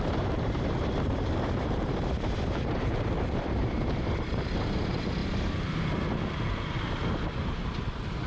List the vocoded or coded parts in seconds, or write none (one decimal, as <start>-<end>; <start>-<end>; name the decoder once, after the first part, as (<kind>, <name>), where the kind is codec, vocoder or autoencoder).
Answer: 0.0-5.2 (vocoder, BigVGAN v2); 7.4-8.3